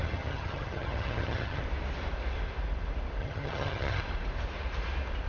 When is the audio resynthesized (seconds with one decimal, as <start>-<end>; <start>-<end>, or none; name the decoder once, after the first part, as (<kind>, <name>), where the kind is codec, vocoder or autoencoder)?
0.0-1.6 (vocoder, HiFi-GAN); 3.2-4.0